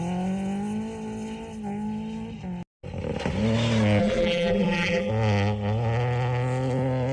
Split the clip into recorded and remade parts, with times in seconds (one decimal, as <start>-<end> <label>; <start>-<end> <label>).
0.0-4.0 recorded; 4.0-5.1 remade; 5.1-7.1 recorded